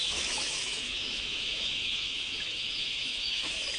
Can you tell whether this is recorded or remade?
remade